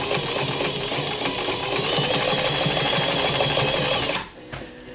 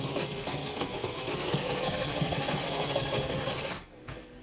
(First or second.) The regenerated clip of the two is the second